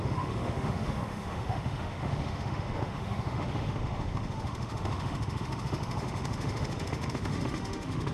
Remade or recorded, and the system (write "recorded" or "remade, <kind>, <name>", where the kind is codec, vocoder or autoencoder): remade, autoencoder, DAC-VAE